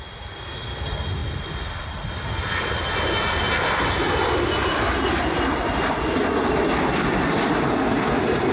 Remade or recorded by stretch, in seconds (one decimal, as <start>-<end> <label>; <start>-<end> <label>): 0.0-8.5 recorded